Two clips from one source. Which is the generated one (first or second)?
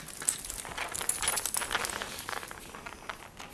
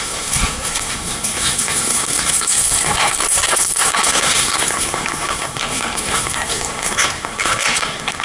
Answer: second